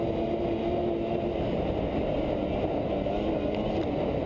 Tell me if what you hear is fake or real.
real